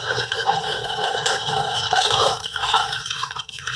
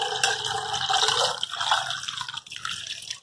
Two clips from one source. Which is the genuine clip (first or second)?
second